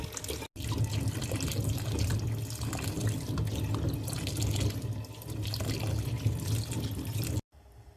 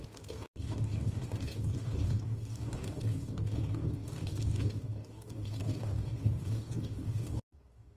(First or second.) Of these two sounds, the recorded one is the first